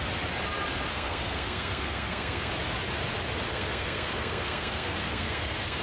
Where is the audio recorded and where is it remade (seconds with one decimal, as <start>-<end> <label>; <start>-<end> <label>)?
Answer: 0.0-0.9 recorded; 0.9-2.5 remade; 2.5-3.5 recorded; 3.5-5.8 remade